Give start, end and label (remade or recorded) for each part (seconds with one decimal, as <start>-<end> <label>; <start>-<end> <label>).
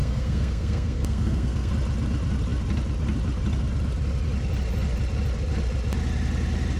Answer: 0.0-1.7 remade; 1.7-6.8 recorded